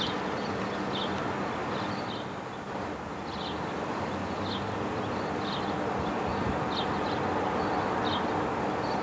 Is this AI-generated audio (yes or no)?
no